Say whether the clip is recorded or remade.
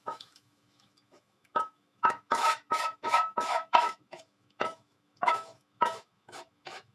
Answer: remade